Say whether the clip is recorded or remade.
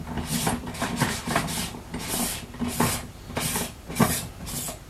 recorded